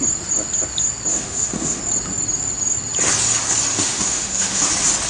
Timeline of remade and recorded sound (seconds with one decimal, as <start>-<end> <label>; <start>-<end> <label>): 0.0-1.1 recorded; 1.1-1.8 remade; 1.8-3.7 recorded; 3.7-4.6 remade; 4.6-5.1 recorded